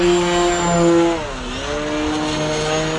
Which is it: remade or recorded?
recorded